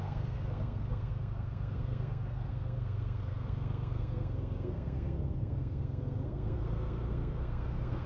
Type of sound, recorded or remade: remade